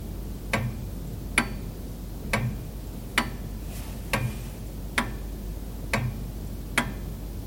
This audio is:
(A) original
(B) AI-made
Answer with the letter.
A